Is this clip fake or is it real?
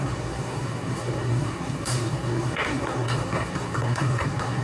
fake